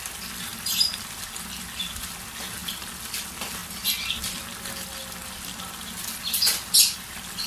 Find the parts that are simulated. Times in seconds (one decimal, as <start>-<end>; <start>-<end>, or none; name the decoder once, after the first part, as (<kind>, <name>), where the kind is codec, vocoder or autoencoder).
2.6-3.2 (vocoder, BigVGAN v2)